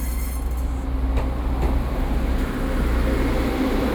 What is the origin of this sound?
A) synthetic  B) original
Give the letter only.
B